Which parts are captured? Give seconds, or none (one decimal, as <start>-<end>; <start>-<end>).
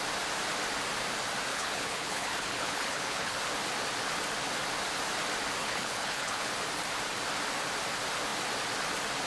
0.0-1.5; 3.4-5.6; 6.5-9.3